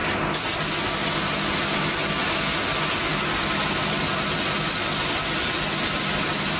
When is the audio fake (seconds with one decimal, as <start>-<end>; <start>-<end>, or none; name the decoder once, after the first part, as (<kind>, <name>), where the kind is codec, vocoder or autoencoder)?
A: none